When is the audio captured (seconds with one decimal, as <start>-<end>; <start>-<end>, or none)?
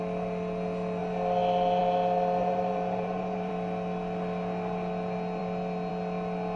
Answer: 0.0-2.4; 3.5-6.6